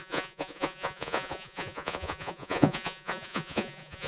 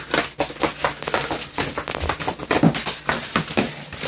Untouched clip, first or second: second